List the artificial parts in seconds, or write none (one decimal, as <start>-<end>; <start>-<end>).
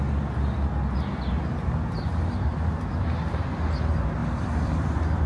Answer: 2.5-3.5; 4.2-5.3